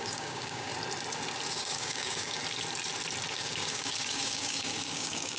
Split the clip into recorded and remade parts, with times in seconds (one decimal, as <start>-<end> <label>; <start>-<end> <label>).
0.0-0.7 remade; 0.7-1.5 recorded; 1.5-2.4 remade; 2.4-3.3 recorded; 3.3-5.4 remade